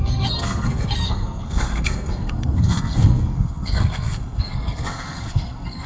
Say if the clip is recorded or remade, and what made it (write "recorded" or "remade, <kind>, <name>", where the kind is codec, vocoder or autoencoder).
remade, codec, SNAC